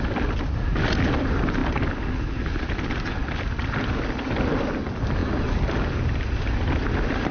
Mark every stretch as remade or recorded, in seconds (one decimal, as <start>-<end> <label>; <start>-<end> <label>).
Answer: 0.0-7.3 recorded